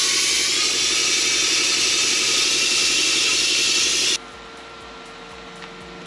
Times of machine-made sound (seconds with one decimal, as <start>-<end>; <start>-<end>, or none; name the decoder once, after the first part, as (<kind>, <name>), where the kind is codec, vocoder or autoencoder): none